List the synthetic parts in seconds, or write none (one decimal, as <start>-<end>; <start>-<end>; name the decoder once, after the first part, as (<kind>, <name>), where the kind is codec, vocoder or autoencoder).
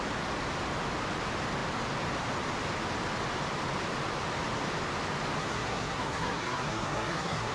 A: 5.4-7.5 (codec, SNAC)